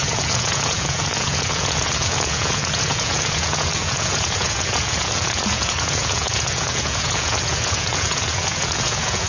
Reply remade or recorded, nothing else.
remade